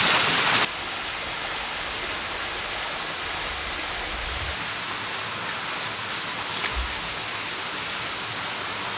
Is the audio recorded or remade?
recorded